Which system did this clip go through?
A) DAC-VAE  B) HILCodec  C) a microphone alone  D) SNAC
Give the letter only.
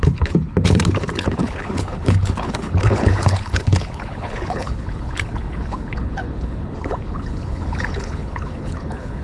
B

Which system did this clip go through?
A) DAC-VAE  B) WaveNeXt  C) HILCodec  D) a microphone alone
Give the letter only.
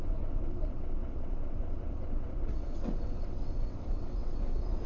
B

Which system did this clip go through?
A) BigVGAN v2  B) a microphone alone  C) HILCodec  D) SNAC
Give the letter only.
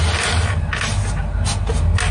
B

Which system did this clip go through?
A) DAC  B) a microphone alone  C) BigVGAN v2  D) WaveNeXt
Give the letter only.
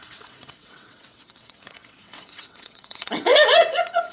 D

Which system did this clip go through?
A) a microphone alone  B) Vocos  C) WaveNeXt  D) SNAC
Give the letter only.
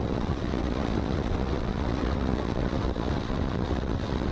C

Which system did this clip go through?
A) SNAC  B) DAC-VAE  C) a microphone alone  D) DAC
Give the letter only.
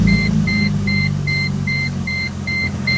D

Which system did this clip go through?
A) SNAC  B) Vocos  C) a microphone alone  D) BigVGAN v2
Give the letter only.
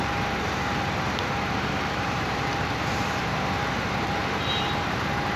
D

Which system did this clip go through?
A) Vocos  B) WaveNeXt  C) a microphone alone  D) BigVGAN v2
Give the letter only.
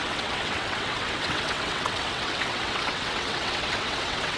B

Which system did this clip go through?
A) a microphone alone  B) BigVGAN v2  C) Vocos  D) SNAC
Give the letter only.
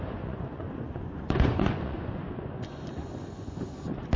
C